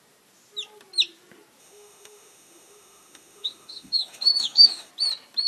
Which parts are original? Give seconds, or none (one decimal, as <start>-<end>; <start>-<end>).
0.0-1.6; 4.9-5.5

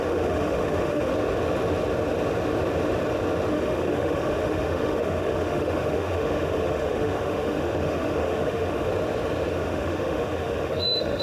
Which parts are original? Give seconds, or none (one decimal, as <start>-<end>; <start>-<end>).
1.1-3.5; 8.9-9.5